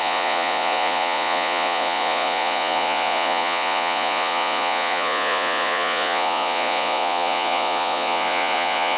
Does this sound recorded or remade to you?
remade